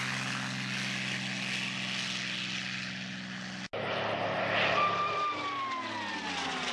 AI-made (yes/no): no